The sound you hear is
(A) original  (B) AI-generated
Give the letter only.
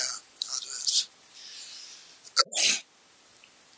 A